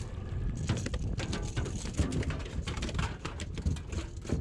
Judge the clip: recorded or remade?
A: remade